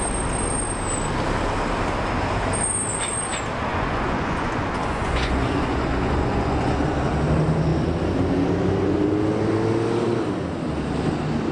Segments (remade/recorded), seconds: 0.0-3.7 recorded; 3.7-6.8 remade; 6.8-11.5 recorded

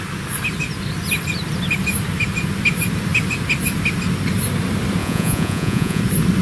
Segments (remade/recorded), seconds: 0.0-5.0 recorded; 5.0-6.0 remade; 6.0-6.4 recorded

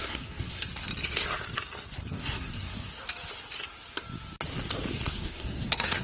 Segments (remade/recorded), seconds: 0.0-0.7 remade; 0.7-2.1 recorded; 2.1-3.0 remade; 3.0-5.1 recorded; 5.1-6.0 remade

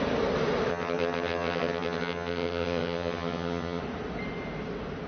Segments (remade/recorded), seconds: 0.0-0.7 recorded; 0.7-3.8 remade; 3.8-5.1 recorded

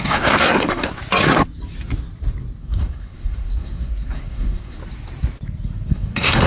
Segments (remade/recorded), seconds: 0.0-1.0 remade; 1.0-2.6 recorded; 2.6-4.8 remade; 4.8-5.9 recorded; 5.9-6.5 remade

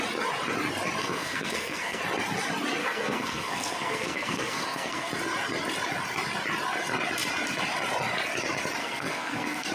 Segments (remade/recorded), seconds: 0.0-1.0 recorded; 1.0-2.0 remade; 2.0-2.8 recorded; 2.8-5.1 remade; 5.1-8.8 recorded; 8.8-9.7 remade